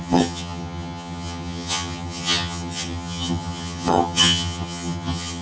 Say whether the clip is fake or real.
fake